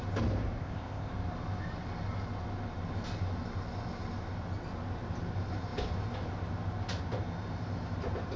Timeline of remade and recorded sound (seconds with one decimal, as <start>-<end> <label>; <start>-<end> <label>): 0.0-0.6 recorded; 0.6-1.1 remade; 1.1-8.4 recorded